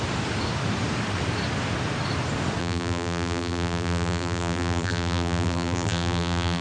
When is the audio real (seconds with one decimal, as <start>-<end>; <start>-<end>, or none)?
0.0-2.6